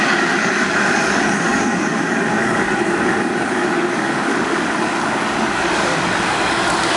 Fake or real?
fake